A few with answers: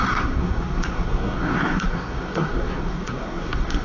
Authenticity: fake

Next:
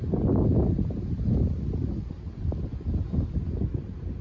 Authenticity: real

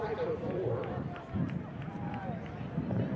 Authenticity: real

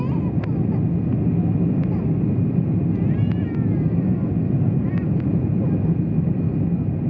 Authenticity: real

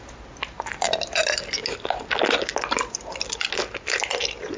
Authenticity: real